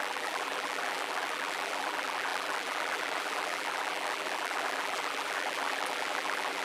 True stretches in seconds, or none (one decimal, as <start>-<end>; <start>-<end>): none